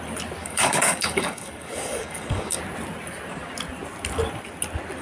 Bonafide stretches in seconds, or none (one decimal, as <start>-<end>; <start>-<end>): 0.0-0.4; 2.6-5.0